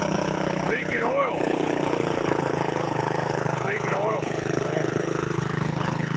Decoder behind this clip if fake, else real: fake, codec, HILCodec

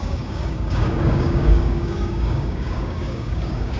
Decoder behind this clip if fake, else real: fake, codec, DAC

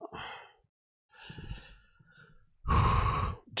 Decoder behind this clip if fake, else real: real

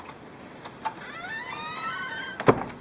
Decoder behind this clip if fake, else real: real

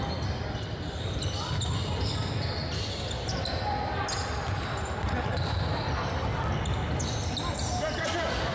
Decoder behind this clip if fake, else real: real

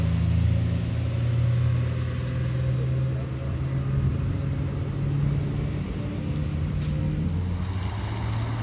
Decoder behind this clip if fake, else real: real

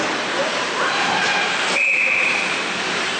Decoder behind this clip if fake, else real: fake, vocoder, BigVGAN v2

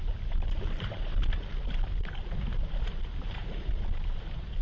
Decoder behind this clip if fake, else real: fake, vocoder, BigVGAN v2